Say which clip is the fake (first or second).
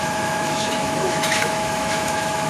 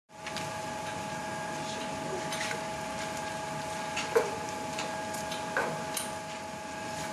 first